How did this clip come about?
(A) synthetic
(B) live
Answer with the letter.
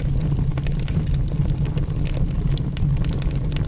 B